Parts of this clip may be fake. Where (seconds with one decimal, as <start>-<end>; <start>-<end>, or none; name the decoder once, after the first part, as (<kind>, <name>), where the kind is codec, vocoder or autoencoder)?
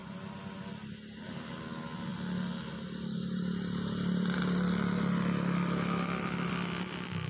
none